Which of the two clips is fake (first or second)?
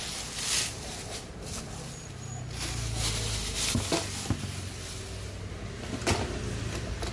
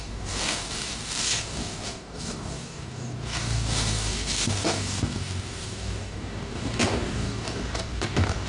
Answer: second